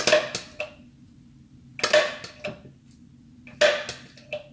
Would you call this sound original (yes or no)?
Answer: yes